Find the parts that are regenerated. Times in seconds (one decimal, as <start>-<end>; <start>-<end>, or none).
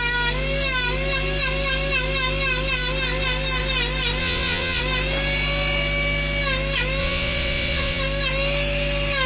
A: 4.2-4.8; 7.0-8.0